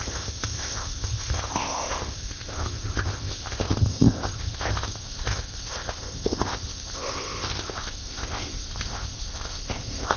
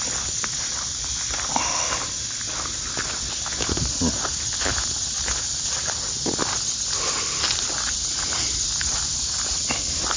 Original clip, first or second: second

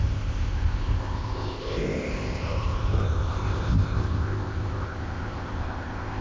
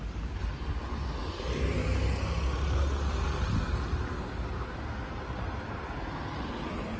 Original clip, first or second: second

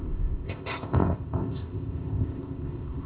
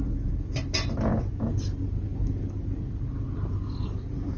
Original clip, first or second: second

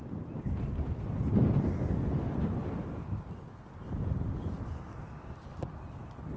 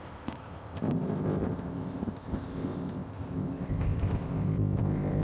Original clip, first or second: first